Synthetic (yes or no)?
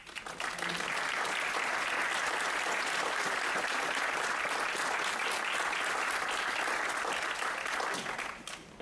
no